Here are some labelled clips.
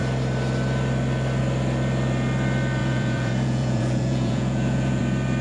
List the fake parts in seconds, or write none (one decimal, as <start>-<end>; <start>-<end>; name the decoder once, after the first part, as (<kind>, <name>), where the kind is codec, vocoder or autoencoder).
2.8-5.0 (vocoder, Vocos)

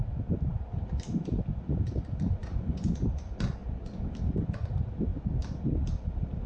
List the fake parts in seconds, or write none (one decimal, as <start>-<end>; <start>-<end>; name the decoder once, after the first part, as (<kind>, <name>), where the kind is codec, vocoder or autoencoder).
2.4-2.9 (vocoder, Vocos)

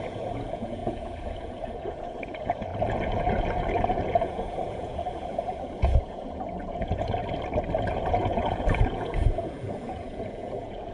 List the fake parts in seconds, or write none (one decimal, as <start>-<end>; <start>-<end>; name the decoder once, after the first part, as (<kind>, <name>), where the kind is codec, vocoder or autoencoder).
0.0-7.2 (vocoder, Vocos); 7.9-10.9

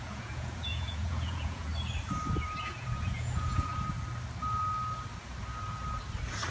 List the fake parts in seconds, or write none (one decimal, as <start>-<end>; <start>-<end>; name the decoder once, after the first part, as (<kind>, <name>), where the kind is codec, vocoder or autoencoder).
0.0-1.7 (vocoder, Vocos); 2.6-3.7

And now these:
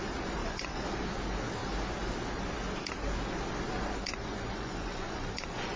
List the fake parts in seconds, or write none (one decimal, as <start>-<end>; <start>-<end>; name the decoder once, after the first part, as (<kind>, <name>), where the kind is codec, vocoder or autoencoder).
0.4-0.9 (vocoder, Vocos); 4.1-5.8

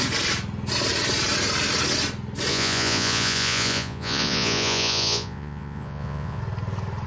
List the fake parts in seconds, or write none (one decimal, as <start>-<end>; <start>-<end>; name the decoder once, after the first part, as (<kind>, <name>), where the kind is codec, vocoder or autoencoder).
2.5-6.4 (vocoder, Vocos)